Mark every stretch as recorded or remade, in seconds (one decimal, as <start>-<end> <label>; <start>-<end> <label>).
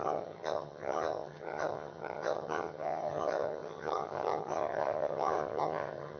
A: 0.0-6.2 remade